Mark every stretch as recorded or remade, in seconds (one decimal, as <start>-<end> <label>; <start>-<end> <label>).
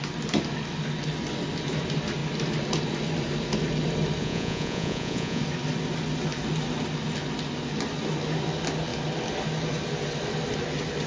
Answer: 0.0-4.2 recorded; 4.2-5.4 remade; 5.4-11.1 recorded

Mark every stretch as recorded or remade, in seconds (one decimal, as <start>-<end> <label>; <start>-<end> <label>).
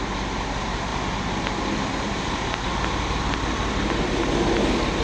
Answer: 0.0-5.0 recorded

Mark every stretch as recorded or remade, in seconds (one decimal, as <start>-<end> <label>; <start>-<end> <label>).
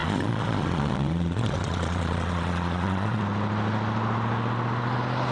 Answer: 0.0-3.2 remade; 3.2-5.3 recorded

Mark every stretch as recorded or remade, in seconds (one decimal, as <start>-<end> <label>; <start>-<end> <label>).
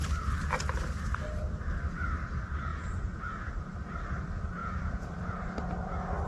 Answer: 0.0-2.7 recorded; 2.7-3.5 remade; 3.5-4.6 recorded; 4.6-5.1 remade; 5.1-6.3 recorded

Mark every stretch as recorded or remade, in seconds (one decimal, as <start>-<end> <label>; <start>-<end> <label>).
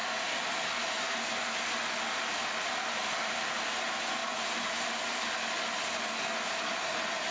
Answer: 0.0-7.3 recorded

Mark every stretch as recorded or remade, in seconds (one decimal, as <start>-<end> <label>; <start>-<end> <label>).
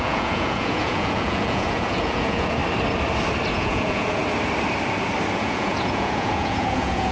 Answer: 0.0-2.6 remade; 2.6-3.5 recorded; 3.5-4.2 remade; 4.2-5.3 recorded; 5.3-7.1 remade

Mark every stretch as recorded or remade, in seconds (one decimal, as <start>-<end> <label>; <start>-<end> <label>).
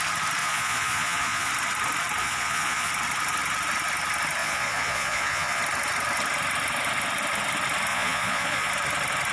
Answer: 0.0-0.4 recorded; 0.4-1.5 remade; 1.5-2.2 recorded; 2.2-2.9 remade; 2.9-4.4 recorded; 4.4-5.6 remade; 5.6-7.9 recorded; 7.9-8.7 remade; 8.7-9.3 recorded